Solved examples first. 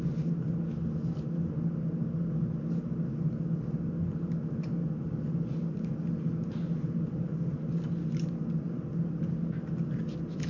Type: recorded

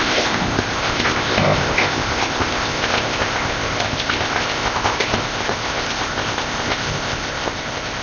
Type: remade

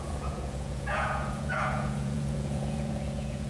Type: remade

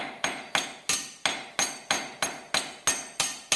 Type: recorded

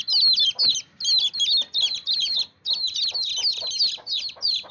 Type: recorded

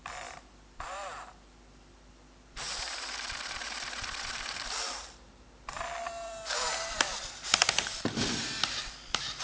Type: remade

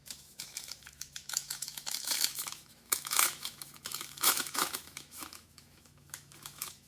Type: remade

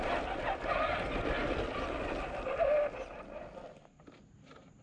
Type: recorded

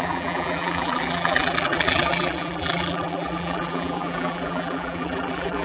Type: remade